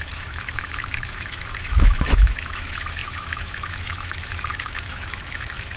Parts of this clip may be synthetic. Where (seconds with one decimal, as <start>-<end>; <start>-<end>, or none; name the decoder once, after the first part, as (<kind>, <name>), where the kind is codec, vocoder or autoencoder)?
0.0-5.8 (autoencoder, DAC-VAE)